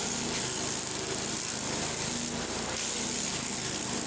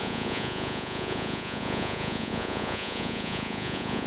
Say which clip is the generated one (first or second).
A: second